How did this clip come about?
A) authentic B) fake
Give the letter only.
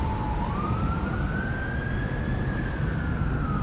A